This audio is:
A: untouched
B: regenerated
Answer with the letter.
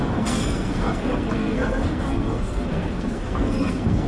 B